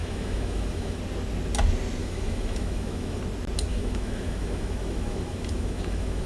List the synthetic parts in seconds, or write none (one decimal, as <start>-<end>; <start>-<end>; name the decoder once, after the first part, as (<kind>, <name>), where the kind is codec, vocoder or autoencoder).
0.0-1.0 (autoencoder, DAC-VAE); 2.0-3.2; 3.7-6.3